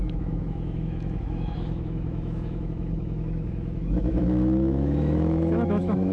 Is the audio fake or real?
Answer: fake